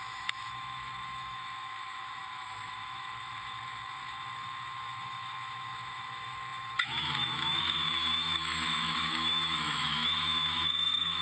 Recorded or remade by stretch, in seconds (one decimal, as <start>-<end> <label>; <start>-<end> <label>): 0.0-11.2 remade